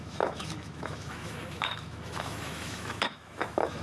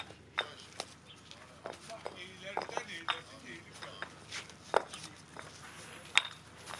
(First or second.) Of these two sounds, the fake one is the first